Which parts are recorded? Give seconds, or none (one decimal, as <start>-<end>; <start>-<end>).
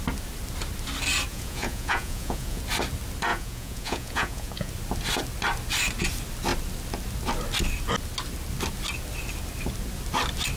0.0-1.3; 2.6-3.3; 4.7-10.6